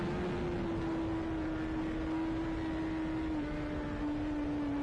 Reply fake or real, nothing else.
real